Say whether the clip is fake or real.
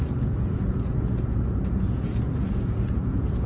fake